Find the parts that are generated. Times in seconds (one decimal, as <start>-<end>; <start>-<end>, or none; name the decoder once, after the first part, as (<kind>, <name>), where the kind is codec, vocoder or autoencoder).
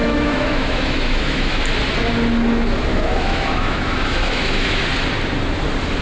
0.0-1.6 (autoencoder, DAC-VAE); 2.9-4.8